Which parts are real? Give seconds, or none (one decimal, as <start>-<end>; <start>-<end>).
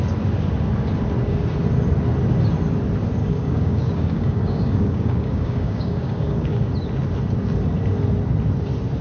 0.0-3.2; 6.7-9.0